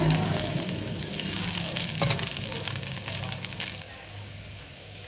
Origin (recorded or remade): remade